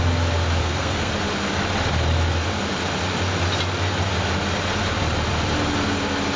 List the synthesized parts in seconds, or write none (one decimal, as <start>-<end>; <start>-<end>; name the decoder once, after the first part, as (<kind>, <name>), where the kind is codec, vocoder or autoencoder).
0.6-1.1 (codec, SNAC)